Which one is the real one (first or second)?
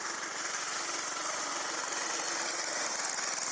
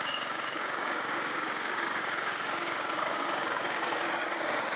first